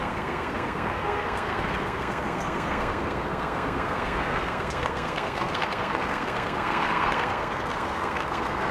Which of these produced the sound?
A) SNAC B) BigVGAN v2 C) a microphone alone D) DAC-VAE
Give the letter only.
A